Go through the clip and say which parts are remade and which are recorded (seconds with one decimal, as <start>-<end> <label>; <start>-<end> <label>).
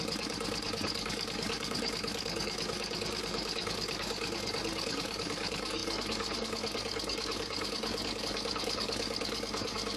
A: 0.0-10.0 remade